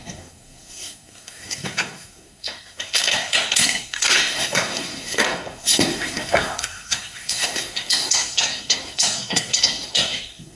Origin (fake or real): fake